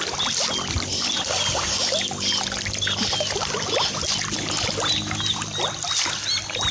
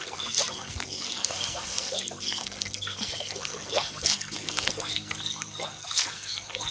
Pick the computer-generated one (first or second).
second